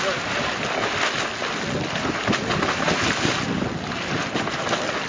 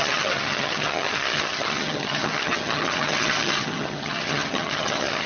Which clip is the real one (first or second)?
first